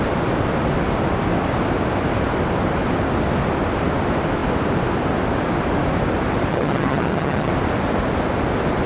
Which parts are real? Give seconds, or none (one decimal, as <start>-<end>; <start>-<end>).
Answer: 0.0-6.5; 7.5-8.9

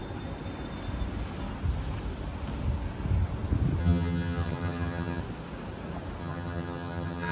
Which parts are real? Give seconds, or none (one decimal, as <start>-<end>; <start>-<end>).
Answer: 0.0-3.8; 5.2-6.2

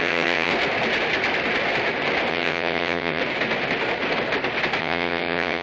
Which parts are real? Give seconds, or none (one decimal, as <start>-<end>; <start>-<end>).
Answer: 0.5-2.3; 3.2-4.8

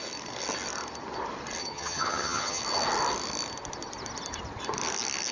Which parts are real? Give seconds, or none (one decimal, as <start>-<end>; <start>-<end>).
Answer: 0.0-1.6; 2.6-5.3